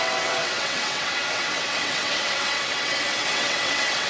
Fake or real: fake